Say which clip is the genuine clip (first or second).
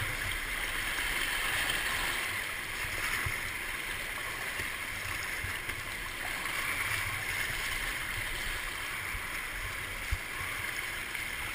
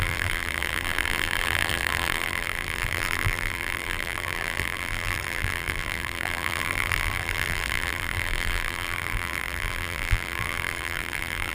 first